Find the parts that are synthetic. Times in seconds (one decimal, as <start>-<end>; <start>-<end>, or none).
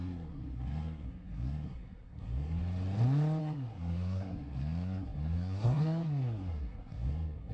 0.0-2.6; 3.4-7.5